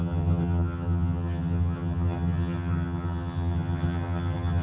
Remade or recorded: remade